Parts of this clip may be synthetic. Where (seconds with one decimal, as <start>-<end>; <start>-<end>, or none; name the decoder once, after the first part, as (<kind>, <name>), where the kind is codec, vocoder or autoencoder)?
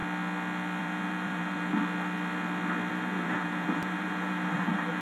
0.8-1.7 (vocoder, BigVGAN v2); 2.9-5.0